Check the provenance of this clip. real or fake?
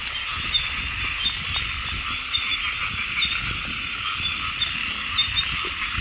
real